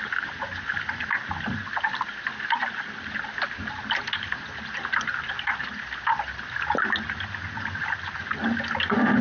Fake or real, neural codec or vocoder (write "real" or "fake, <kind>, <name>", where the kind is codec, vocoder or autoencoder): real